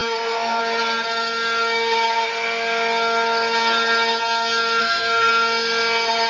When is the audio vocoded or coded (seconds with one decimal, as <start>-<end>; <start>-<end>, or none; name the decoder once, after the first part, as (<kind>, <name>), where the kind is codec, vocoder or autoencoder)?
0.0-0.6 (codec, SNAC); 4.8-5.3